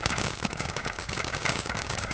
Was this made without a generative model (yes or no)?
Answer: no